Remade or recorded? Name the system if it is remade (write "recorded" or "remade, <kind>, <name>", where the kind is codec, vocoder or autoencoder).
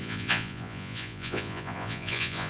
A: remade, vocoder, Vocos